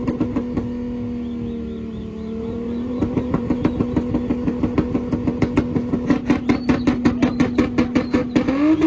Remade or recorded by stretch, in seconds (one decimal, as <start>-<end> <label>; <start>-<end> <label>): 0.0-1.9 recorded; 1.9-3.8 remade; 3.8-8.9 recorded